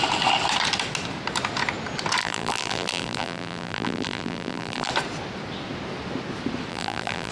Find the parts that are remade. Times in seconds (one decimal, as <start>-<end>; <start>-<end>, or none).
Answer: 2.2-4.9; 6.7-7.3